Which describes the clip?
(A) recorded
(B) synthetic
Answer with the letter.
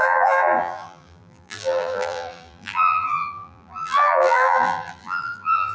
B